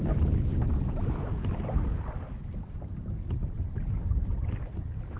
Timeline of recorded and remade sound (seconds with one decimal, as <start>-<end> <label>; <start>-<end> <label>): 0.0-5.2 recorded